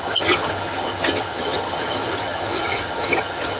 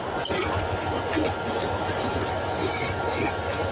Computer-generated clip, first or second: first